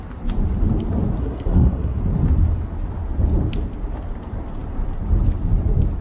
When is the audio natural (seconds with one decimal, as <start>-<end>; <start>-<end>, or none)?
0.0-1.2; 2.0-6.0